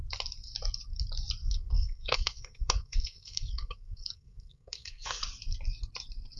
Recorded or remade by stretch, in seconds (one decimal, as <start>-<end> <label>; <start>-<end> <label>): 0.0-1.4 recorded; 1.4-5.2 remade; 5.2-6.4 recorded